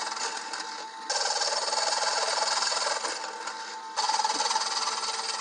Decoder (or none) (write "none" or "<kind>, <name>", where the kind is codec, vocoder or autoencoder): none